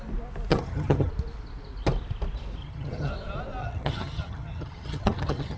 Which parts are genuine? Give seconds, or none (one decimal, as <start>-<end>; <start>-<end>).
0.0-0.5; 1.1-2.6; 3.1-3.6